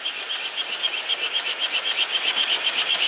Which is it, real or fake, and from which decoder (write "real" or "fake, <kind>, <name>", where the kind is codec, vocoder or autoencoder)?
real